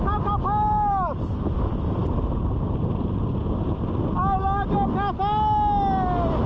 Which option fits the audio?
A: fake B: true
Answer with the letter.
B